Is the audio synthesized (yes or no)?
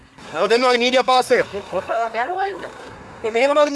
yes